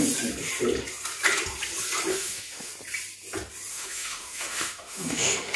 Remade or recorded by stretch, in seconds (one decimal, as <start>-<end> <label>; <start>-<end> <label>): 0.0-2.1 recorded; 2.1-2.7 remade; 2.7-3.7 recorded; 3.7-5.6 remade